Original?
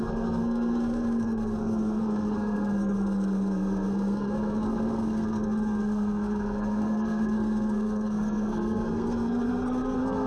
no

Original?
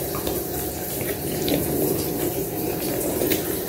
no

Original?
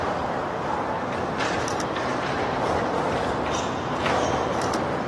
no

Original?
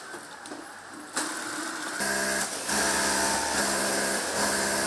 yes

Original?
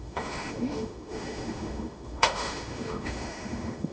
no